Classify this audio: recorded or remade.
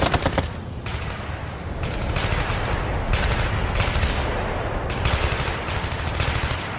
recorded